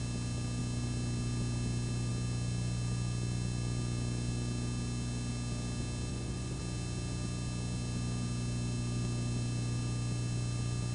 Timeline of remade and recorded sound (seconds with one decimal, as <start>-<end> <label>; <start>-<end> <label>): 0.0-6.1 recorded; 6.1-6.6 remade; 6.6-10.9 recorded